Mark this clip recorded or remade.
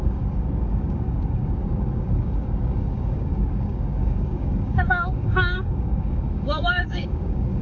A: remade